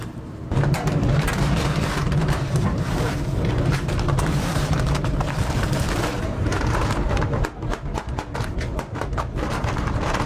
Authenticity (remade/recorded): remade